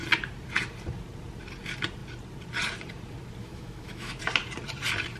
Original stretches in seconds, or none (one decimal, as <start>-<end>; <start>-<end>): 0.0-3.4; 4.2-5.2

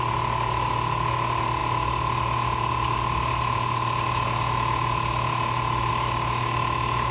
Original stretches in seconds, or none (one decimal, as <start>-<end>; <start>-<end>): 0.0-7.1

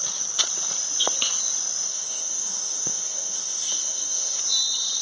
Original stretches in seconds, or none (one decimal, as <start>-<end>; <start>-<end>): 0.0-1.9; 4.4-5.0

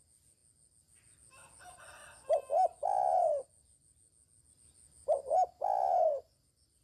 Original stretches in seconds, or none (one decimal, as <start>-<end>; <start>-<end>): 0.0-6.8

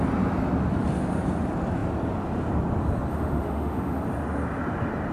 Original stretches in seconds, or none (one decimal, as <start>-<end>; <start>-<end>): 0.0-3.1; 4.0-5.1

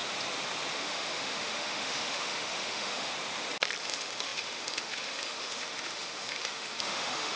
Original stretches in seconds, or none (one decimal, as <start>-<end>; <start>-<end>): 0.0-0.7; 3.1-3.8

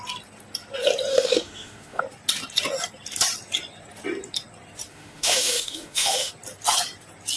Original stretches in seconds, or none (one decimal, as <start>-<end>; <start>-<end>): 0.0-1.1; 2.0-4.9; 6.3-7.4